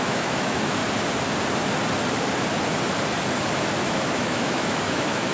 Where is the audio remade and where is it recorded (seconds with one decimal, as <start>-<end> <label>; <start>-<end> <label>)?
0.0-0.8 remade; 0.8-3.8 recorded; 3.8-5.3 remade